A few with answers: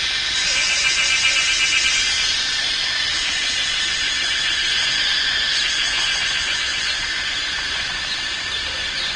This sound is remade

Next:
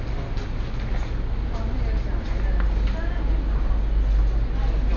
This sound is recorded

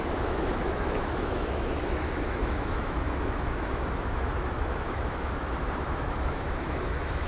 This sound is remade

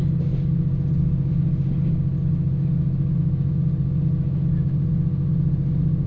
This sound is recorded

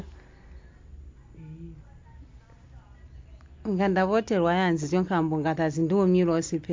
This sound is recorded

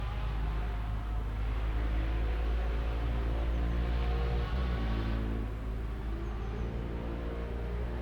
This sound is recorded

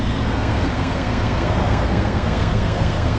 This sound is remade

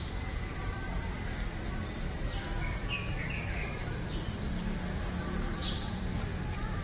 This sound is remade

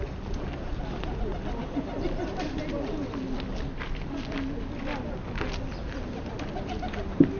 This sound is recorded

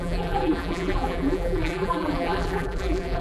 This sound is remade